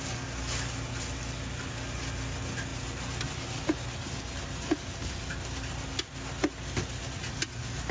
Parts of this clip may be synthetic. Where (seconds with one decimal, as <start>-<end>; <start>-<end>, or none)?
none